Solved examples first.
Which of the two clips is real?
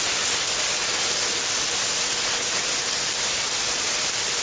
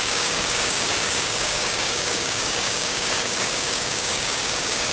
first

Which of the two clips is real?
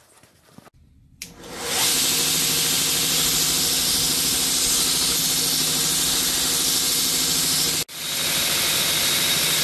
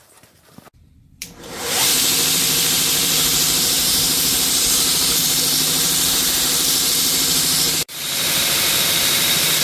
first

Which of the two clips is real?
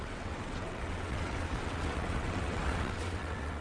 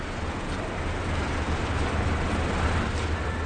second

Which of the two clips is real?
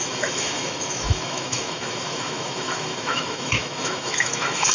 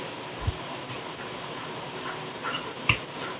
second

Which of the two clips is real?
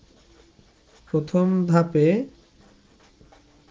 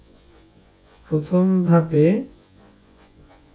first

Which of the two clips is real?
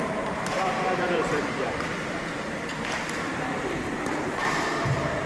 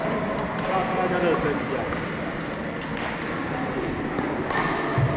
second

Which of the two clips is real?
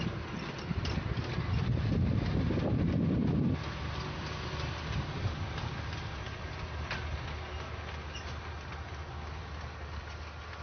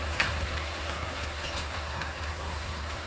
first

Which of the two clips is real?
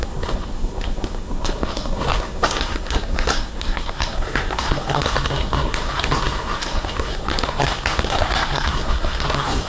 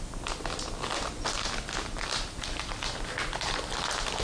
second